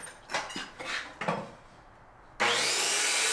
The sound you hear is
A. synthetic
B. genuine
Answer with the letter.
B